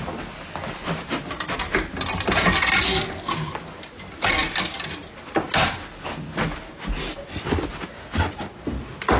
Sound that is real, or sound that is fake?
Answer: real